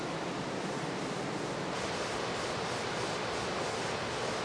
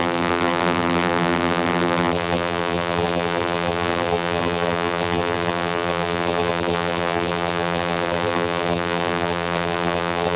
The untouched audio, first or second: first